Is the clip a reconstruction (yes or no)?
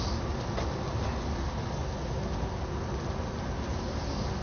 no